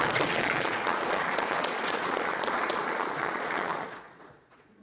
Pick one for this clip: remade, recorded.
remade